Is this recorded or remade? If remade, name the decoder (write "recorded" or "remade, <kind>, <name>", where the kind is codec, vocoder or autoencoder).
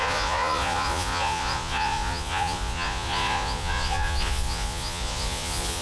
remade, vocoder, Vocos